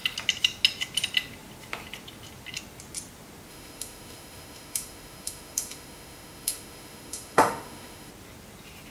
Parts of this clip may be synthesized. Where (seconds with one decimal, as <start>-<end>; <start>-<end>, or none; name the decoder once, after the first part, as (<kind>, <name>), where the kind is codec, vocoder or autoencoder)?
3.5-8.1 (autoencoder, DAC-VAE)